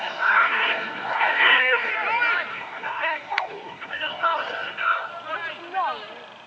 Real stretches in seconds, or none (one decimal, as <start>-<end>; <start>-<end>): 1.9-2.5; 5.1-6.5